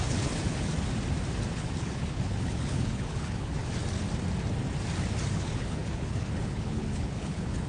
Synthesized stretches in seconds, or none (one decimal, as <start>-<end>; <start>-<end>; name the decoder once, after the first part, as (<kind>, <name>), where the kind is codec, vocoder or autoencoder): 0.0-0.7 (codec, HILCodec); 1.5-3.6; 5.3-7.7